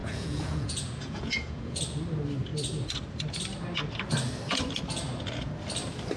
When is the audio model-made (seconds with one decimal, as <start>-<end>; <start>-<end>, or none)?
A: 0.0-1.8